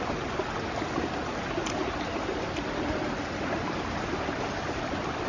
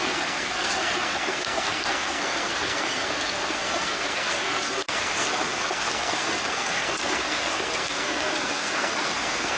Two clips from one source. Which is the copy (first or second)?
second